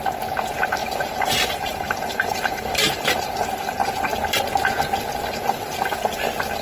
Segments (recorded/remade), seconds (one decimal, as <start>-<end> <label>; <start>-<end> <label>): 0.0-0.8 recorded; 0.8-3.3 remade; 3.3-6.6 recorded